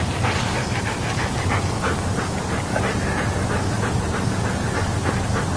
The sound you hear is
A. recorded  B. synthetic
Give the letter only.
A